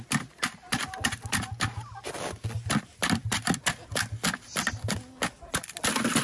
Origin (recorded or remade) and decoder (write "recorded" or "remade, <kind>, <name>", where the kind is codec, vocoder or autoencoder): recorded